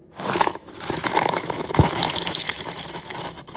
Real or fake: fake